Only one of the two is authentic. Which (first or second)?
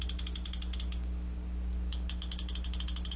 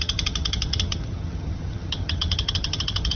first